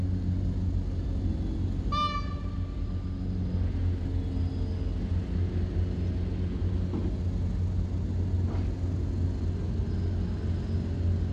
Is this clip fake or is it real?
real